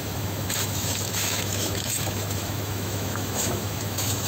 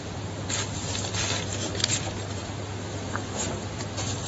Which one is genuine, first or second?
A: second